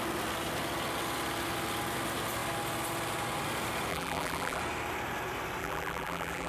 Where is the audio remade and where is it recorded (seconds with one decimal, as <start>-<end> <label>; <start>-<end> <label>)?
0.0-3.9 recorded; 3.9-4.6 remade; 4.6-5.6 recorded; 5.6-6.5 remade